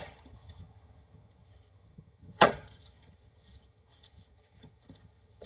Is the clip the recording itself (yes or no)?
no